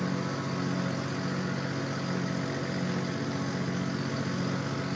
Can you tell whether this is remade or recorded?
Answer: recorded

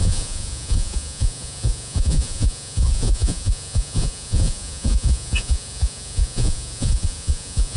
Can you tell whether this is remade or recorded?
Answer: remade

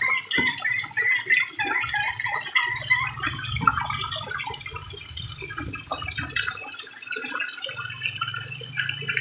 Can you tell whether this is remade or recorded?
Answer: recorded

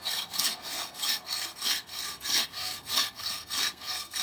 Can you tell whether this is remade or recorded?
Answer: remade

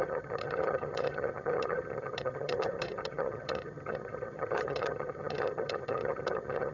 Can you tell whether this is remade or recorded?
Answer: remade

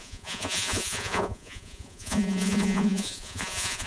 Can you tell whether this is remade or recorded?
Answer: remade